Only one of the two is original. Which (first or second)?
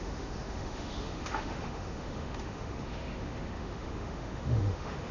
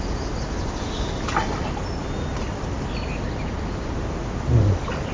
second